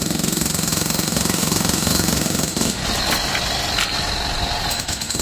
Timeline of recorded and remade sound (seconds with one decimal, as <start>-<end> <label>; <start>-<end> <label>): 0.0-2.8 remade; 2.8-4.7 recorded; 4.7-5.2 remade